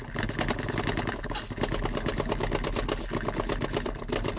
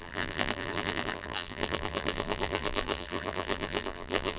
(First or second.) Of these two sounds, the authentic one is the first